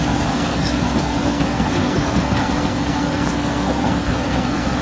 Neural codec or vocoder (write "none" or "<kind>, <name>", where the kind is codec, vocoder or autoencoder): codec, SNAC